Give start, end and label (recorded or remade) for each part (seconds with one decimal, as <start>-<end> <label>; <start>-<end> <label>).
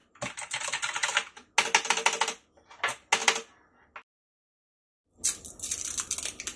0.0-6.6 recorded